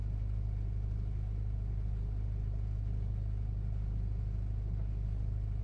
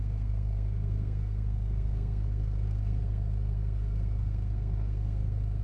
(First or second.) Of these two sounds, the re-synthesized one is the second